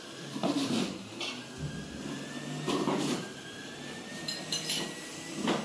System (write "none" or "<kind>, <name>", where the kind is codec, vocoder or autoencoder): vocoder, BigVGAN v2